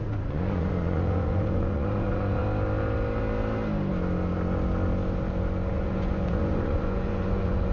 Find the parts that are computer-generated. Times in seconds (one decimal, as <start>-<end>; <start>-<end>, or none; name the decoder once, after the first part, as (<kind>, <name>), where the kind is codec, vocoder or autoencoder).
0.0-2.4 (vocoder, Vocos); 5.7-7.7